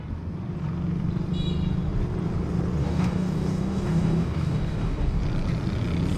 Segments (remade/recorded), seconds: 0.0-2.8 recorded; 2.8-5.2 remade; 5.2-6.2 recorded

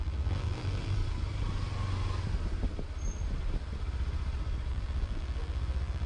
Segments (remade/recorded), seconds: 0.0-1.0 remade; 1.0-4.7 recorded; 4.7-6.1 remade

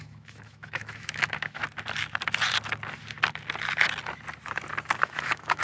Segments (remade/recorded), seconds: 0.0-1.6 remade; 1.6-5.0 recorded; 5.0-5.6 remade

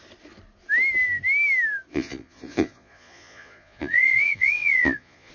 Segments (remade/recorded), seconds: 0.0-1.9 recorded; 1.9-5.3 remade